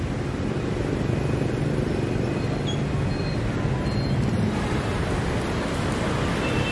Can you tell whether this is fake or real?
real